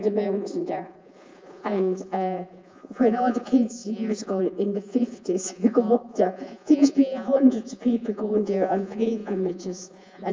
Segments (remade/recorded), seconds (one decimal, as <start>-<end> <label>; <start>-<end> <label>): 0.0-10.3 remade